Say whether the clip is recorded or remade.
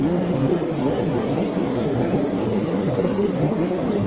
remade